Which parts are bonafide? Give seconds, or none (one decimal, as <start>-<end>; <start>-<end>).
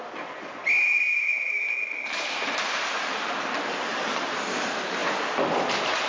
0.0-0.9; 3.4-5.0